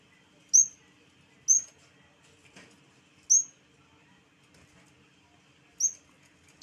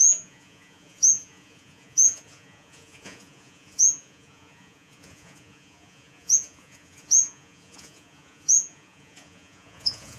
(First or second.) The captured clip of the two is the first